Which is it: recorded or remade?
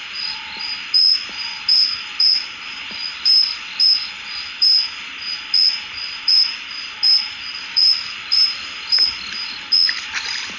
remade